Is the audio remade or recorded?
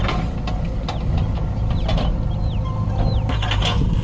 recorded